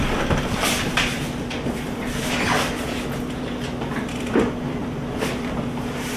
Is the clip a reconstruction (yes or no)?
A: yes